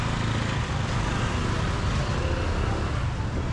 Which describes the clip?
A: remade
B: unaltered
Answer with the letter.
B